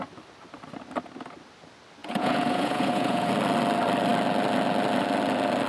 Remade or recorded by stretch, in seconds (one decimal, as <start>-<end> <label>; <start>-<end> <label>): 0.0-2.0 recorded; 2.0-3.3 remade; 3.3-5.7 recorded